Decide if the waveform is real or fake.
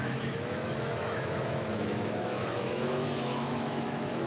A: fake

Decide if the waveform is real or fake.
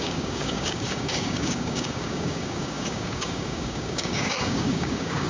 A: fake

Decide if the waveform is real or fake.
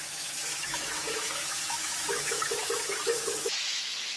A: fake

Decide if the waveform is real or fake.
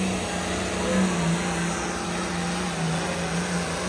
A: real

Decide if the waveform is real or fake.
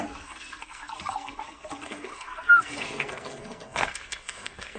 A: fake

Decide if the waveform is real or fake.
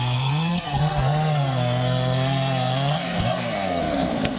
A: fake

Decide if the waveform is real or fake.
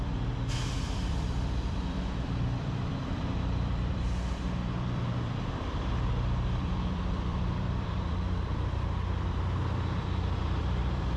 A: fake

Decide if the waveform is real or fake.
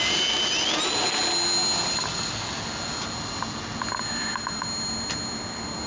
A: real